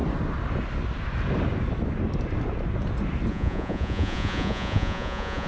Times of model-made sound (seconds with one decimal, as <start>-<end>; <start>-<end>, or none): 3.3-5.5